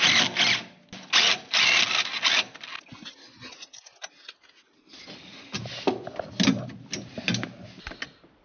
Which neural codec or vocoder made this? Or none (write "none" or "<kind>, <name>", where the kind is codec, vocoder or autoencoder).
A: none